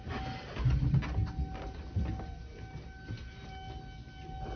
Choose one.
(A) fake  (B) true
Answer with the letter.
B